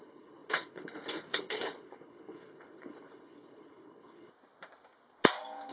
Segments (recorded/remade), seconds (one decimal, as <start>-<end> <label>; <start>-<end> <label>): 0.0-4.3 remade; 4.3-5.7 recorded